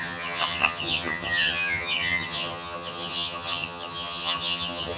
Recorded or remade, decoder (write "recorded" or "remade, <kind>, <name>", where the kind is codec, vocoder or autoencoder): remade, vocoder, HiFi-GAN